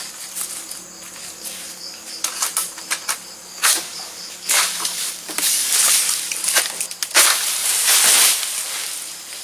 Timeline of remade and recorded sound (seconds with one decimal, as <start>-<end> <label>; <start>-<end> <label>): 0.0-1.2 recorded; 1.2-2.3 remade; 2.3-3.5 recorded; 3.5-5.9 remade; 5.9-9.4 recorded